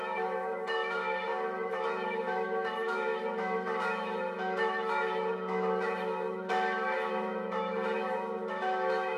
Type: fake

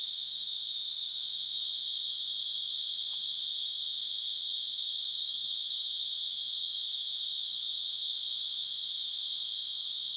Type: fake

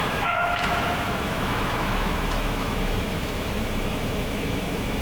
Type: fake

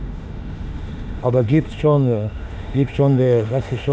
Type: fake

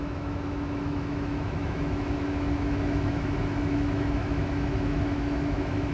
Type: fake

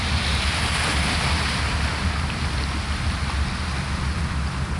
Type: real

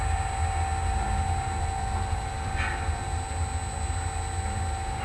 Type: real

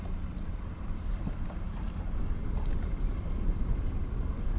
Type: real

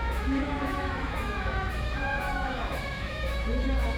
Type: fake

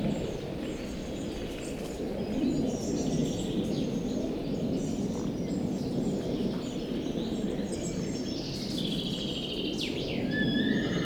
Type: real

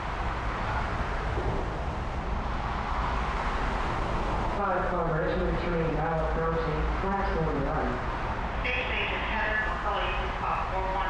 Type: real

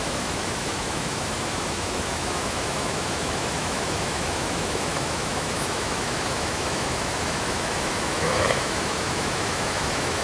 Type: fake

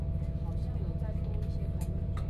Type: real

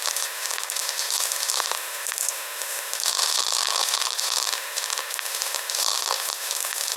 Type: fake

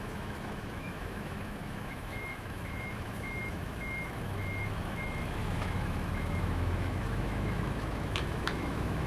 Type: fake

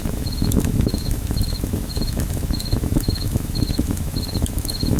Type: fake